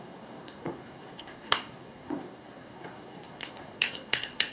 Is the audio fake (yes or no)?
yes